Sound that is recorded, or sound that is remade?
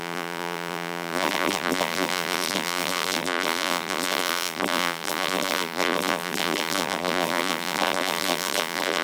remade